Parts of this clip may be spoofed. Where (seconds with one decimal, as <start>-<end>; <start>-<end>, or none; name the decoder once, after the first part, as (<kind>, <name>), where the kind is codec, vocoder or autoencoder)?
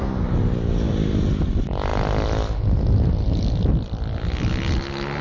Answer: none